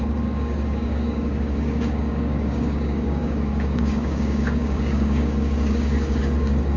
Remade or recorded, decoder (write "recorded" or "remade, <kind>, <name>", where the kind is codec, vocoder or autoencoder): remade, codec, DAC